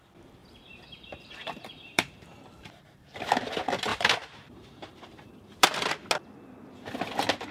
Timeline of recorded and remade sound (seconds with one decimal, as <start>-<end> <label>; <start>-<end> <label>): 0.0-0.4 recorded; 0.4-2.3 remade; 2.3-3.9 recorded; 3.9-5.9 remade; 5.9-7.5 recorded